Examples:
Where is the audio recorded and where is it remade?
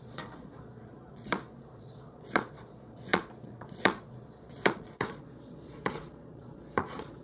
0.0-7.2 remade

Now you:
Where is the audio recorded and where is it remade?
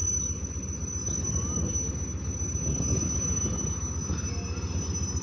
0.0-5.2 recorded